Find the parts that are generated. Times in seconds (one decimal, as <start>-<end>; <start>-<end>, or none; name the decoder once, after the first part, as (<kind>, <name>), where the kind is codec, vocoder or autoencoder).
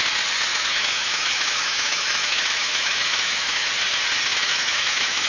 0.5-3.7 (autoencoder, DAC-VAE); 4.3-5.3